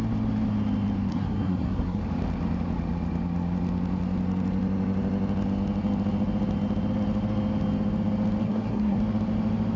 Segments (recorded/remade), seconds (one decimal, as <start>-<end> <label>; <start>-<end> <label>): 0.0-1.1 recorded; 1.1-2.0 remade; 2.0-8.4 recorded; 8.4-9.0 remade; 9.0-9.8 recorded